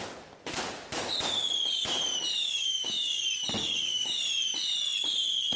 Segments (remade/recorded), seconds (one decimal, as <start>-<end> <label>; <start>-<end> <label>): 0.0-2.4 recorded; 2.4-3.2 remade; 3.2-3.6 recorded; 3.6-4.2 remade; 4.2-5.6 recorded